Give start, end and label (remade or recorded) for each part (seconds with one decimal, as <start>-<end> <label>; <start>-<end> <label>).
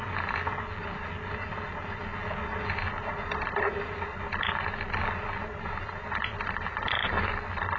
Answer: 0.0-7.8 recorded